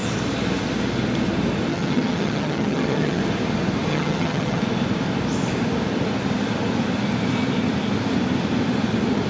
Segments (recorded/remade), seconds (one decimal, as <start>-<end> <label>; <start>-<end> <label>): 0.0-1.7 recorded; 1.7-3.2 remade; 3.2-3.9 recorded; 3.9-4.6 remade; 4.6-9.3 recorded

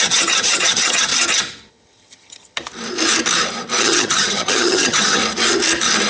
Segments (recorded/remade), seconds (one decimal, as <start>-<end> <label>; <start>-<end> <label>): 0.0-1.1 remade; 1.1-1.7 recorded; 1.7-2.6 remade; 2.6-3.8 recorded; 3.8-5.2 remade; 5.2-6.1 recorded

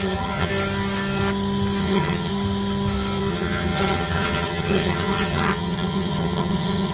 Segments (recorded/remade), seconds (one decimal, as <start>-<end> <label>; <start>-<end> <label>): 0.0-0.5 remade; 0.5-1.8 recorded; 1.8-2.3 remade; 2.3-3.3 recorded; 3.3-6.9 remade

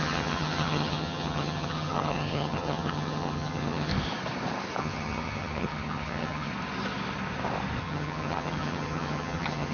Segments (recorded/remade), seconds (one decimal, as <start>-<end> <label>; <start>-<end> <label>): 0.0-3.9 remade; 3.9-4.8 recorded; 4.8-6.5 remade; 6.5-7.8 recorded; 7.8-9.7 remade

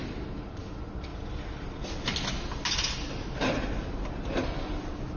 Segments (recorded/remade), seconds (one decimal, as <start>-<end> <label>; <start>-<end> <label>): 0.0-5.2 recorded

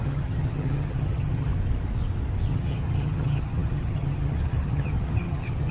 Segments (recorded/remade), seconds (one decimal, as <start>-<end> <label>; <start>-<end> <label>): 0.0-1.5 remade; 1.5-2.5 recorded; 2.5-5.7 remade